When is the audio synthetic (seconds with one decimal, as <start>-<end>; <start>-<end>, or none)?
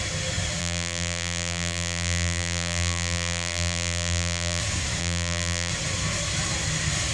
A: 0.6-4.6; 5.0-5.7